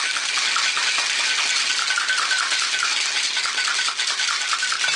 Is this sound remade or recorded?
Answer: recorded